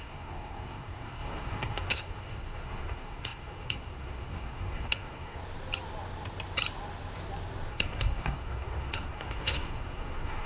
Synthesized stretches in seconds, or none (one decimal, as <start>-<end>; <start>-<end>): 0.0-5.4; 7.7-10.5